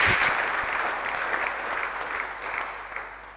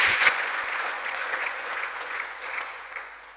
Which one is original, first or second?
first